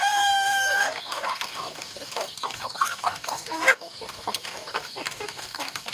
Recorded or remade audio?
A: remade